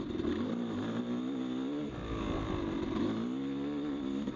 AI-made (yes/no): no